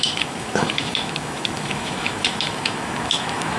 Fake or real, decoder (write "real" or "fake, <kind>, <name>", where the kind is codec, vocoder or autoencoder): fake, autoencoder, DAC-VAE